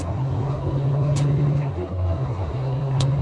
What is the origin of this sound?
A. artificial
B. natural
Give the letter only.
A